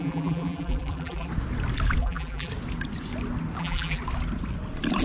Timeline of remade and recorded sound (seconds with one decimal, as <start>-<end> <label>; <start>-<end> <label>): 0.0-1.3 remade; 1.3-2.0 recorded; 2.0-2.5 remade; 2.5-3.6 recorded; 3.6-4.0 remade; 4.0-5.0 recorded